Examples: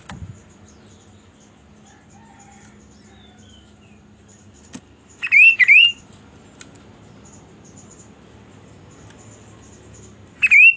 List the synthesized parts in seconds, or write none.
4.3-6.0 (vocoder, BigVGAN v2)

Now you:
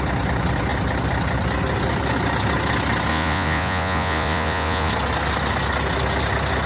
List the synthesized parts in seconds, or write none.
3.1-4.9 (vocoder, Vocos)

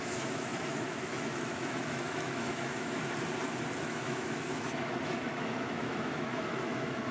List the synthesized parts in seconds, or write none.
0.0-3.0 (autoencoder, DAC-VAE); 3.8-7.1

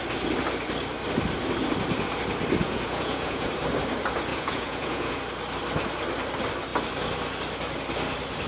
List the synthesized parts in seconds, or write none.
2.6-3.5 (vocoder, Vocos); 4.3-5.2

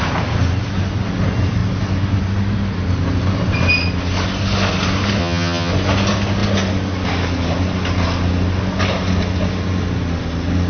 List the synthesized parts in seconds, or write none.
5.2-5.7 (vocoder, HiFi-GAN)